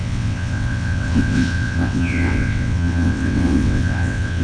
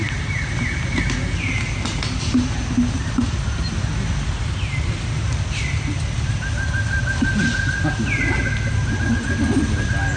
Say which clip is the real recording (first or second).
second